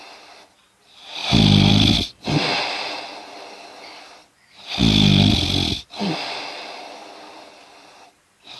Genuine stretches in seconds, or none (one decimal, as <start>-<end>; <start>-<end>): 0.0-1.2; 1.7-8.6